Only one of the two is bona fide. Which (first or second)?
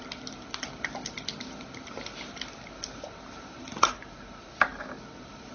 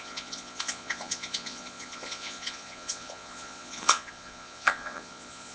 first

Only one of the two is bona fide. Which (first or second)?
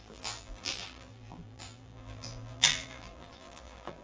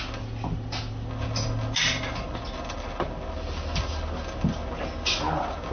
second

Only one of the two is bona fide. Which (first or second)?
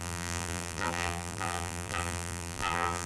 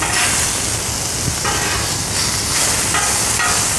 second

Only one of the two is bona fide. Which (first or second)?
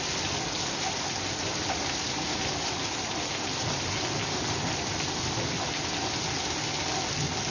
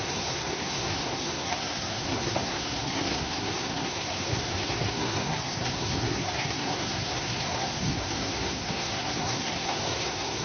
first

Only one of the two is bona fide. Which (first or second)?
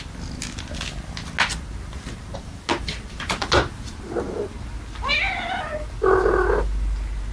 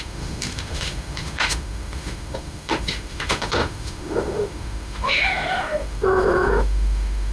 first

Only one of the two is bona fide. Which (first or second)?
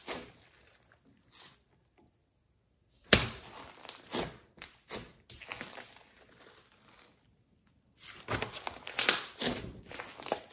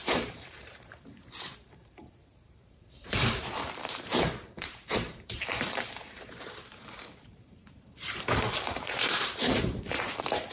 first